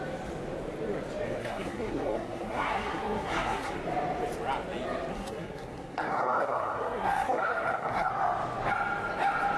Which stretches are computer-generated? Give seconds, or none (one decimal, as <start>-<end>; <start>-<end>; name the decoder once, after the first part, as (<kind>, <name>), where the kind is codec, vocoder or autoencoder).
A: 1.4-3.7 (codec, SNAC); 5.1-8.1